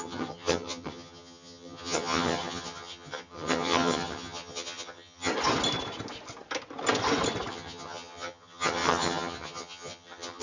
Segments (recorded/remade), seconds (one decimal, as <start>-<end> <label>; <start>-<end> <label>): 0.0-5.3 remade; 5.3-7.5 recorded; 7.5-10.4 remade